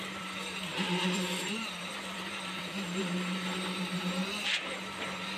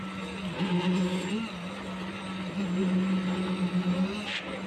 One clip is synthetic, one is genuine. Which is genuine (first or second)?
second